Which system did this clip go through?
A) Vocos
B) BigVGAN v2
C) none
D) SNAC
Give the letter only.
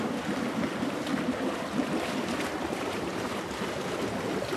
C